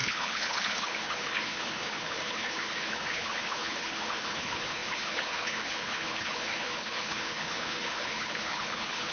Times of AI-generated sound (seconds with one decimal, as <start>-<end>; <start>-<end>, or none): 0.0-9.1